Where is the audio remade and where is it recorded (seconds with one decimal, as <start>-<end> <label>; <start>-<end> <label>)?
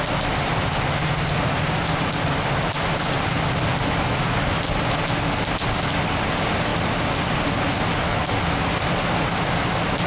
0.0-10.1 recorded